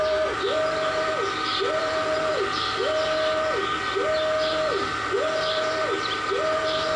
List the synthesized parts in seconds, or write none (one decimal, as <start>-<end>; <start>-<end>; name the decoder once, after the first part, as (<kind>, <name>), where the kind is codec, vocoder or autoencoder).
1.8-2.8 (vocoder, BigVGAN v2)